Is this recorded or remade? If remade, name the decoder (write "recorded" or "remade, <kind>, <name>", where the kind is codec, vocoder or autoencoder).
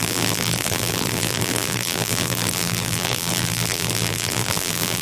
remade, vocoder, BigVGAN v2